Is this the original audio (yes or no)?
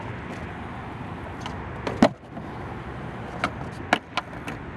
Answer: yes